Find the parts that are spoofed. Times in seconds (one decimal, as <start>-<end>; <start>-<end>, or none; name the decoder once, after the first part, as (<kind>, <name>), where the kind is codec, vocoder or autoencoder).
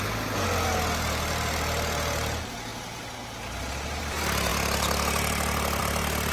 none